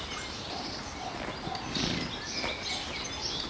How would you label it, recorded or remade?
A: recorded